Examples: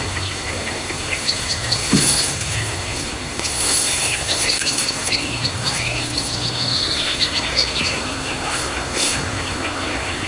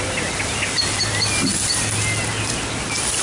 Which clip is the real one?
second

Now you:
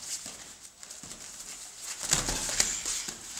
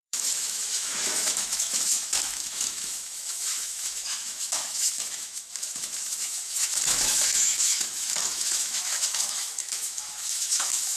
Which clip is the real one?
first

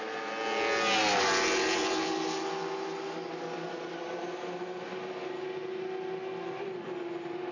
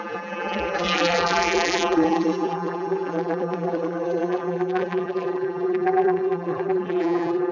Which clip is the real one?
first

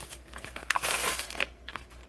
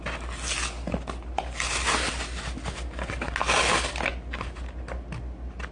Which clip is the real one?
second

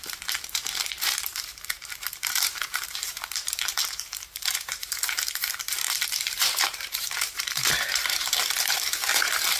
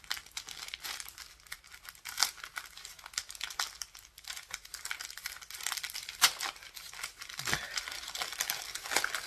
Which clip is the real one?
second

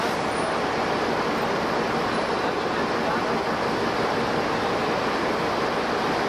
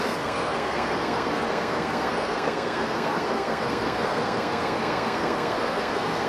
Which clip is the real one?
first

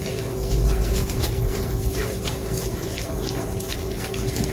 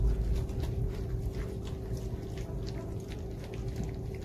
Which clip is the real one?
second